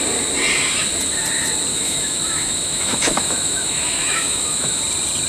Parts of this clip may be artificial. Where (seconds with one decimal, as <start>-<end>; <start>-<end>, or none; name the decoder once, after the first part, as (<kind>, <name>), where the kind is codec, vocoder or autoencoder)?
1.7-4.8 (autoencoder, DAC-VAE)